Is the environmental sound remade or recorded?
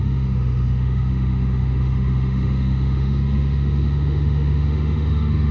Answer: remade